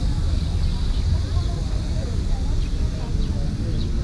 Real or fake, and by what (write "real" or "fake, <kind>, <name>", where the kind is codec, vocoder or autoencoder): real